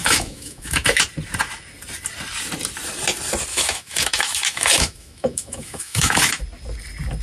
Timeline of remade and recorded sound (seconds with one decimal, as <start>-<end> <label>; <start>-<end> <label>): 0.0-1.0 remade; 1.0-3.5 recorded; 3.5-6.4 remade; 6.4-7.2 recorded